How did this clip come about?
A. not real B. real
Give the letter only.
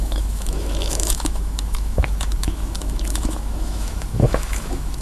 A